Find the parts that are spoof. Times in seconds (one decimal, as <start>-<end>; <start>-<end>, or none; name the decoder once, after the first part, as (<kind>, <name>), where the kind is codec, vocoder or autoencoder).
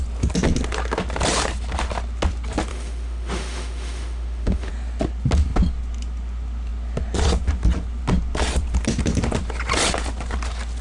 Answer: 2.7-4.7 (autoencoder, DAC-VAE)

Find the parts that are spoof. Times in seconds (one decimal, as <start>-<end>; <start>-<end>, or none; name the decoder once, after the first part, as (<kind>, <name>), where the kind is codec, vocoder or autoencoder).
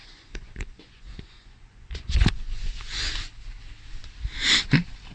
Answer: 0.0-3.1 (vocoder, Vocos)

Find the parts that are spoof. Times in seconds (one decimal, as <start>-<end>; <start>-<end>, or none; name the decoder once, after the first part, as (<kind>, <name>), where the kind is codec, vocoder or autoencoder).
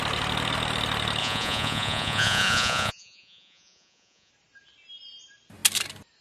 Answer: 1.2-4.3 (vocoder, Vocos)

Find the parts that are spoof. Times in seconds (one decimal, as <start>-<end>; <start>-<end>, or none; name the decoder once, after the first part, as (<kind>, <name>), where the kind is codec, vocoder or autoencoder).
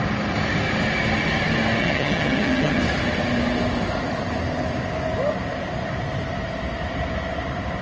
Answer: 1.8-2.8 (vocoder, HiFi-GAN)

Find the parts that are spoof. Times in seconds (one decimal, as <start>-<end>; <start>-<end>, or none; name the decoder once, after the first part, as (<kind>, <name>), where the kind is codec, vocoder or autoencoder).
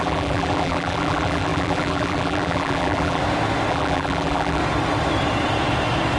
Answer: 0.0-3.2 (vocoder, BigVGAN v2); 3.7-4.6